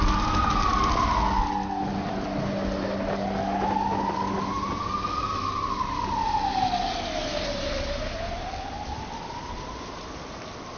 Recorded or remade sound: recorded